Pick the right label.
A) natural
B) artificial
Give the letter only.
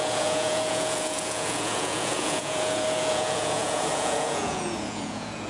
B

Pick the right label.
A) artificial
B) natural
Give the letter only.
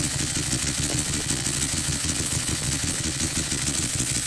A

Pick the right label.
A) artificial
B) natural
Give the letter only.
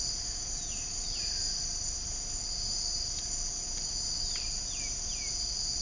B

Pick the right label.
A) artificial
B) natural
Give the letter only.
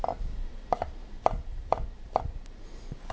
B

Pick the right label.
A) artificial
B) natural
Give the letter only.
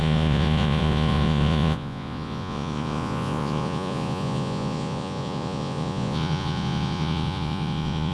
A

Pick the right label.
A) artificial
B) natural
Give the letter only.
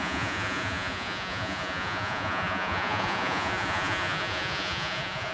A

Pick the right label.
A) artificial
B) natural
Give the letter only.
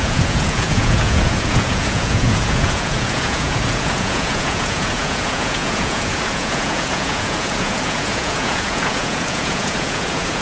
A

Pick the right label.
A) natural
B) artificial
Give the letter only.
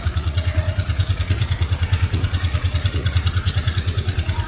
B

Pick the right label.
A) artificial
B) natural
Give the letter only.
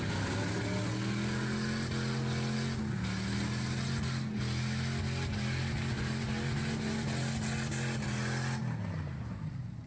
B